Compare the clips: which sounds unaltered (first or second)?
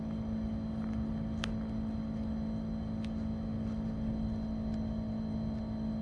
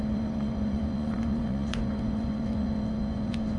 first